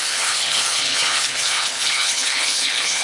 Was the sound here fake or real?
fake